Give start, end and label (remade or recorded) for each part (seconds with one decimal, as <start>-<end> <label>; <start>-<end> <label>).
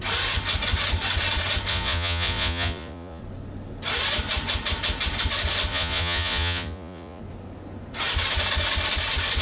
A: 0.0-1.7 recorded; 1.7-3.2 remade; 3.2-5.7 recorded; 5.7-7.2 remade; 7.2-9.4 recorded